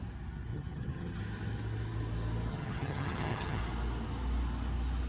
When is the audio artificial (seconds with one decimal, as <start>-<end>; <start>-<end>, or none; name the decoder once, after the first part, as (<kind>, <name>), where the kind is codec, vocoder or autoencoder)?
0.5-1.2 (vocoder, HiFi-GAN); 2.5-3.6